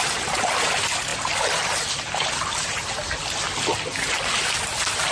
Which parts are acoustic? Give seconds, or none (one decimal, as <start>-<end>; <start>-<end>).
0.0-5.1